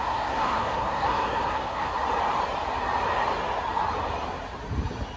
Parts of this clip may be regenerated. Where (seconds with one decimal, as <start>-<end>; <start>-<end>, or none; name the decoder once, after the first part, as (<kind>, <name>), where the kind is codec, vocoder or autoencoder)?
0.0-1.9 (codec, SNAC)